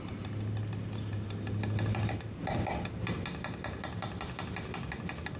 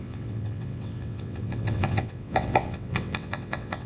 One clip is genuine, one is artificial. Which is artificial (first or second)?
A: second